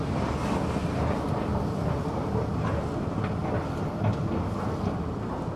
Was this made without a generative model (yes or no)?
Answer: yes